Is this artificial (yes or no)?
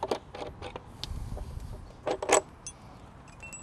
no